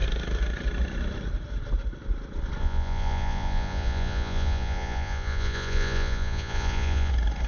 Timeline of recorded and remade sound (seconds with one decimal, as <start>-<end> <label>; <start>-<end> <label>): 0.0-2.6 recorded; 2.6-7.1 remade; 7.1-7.5 recorded